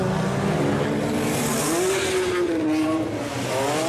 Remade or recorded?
recorded